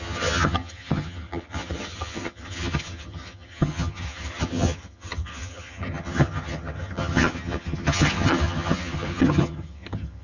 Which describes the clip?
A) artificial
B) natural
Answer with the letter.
A